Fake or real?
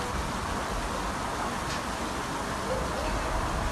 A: real